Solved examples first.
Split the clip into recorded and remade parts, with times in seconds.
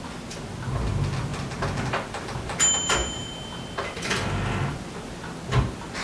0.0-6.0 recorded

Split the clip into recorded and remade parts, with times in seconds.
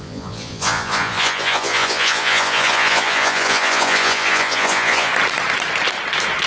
0.0-5.1 remade; 5.1-6.5 recorded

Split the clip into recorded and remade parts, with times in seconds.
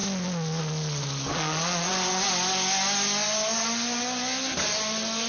0.0-1.3 recorded; 1.3-1.9 remade; 1.9-5.3 recorded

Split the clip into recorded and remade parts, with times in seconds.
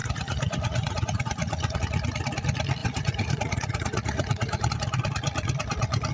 0.0-1.8 remade; 1.8-2.8 recorded; 2.8-4.7 remade; 4.7-6.1 recorded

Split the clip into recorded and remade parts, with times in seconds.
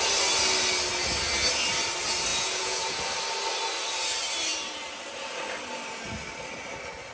0.0-2.3 recorded; 2.3-3.1 remade; 3.1-7.1 recorded